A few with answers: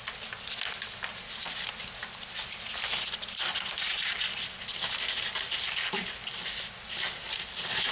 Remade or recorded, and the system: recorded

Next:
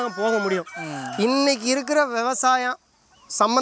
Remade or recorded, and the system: recorded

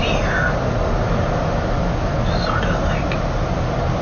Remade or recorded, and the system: recorded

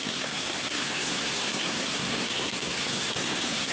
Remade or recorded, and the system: remade, codec, SNAC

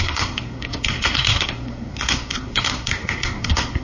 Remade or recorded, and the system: remade, codec, SNAC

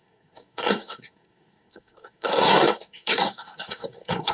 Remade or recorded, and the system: remade, codec, SNAC